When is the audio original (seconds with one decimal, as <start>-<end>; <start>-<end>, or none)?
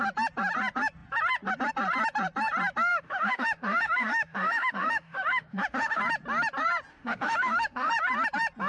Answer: 0.0-2.9; 6.0-6.9; 7.9-8.7